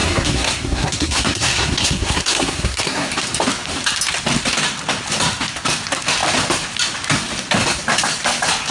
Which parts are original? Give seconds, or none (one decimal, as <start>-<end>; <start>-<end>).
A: 3.1-8.7